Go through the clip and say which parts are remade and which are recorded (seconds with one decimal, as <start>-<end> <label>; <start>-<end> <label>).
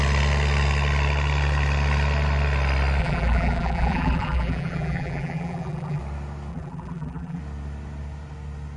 0.0-3.0 recorded; 3.0-6.0 remade; 6.0-6.5 recorded; 6.5-7.4 remade; 7.4-8.8 recorded